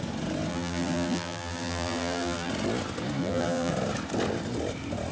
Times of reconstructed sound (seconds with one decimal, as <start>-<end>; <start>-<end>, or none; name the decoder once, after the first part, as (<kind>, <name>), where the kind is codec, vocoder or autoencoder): 0.5-2.5 (vocoder, BigVGAN v2); 3.2-3.7